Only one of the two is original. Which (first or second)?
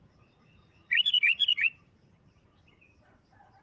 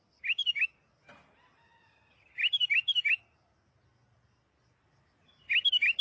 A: second